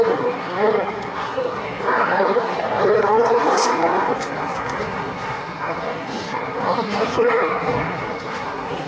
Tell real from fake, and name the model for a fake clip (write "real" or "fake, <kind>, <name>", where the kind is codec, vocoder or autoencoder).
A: fake, codec, SNAC